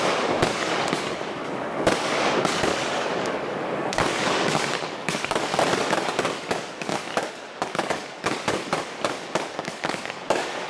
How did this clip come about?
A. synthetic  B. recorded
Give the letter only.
A